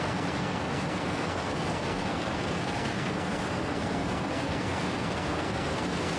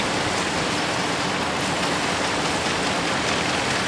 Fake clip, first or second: first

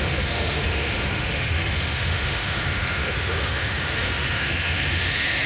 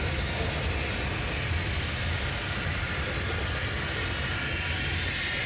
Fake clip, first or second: first